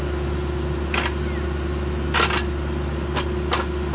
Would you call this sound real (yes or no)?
yes